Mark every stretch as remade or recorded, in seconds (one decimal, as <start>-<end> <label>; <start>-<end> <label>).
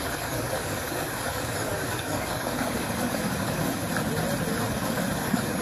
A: 0.0-3.8 remade; 3.8-4.7 recorded; 4.7-5.6 remade